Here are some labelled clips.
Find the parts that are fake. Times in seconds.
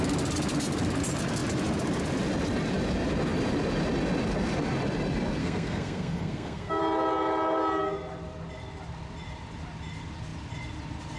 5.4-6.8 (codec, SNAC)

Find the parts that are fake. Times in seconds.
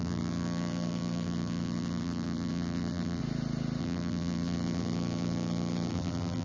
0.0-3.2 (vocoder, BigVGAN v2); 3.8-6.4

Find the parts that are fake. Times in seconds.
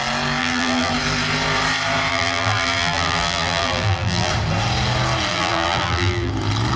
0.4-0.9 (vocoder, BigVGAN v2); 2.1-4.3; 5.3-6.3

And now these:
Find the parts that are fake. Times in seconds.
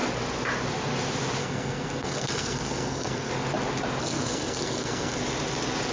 1.4-3.3 (codec, SNAC); 4.0-5.2